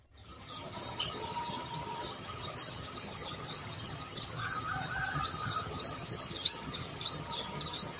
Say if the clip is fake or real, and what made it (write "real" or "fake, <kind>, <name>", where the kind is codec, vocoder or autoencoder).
fake, vocoder, HiFi-GAN